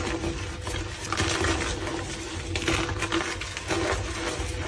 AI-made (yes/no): no